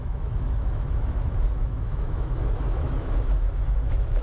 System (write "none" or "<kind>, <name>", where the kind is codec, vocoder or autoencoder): autoencoder, DAC-VAE